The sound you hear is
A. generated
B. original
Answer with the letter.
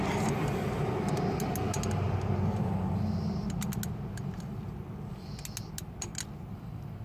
B